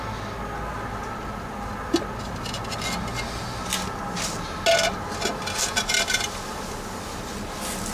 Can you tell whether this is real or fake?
real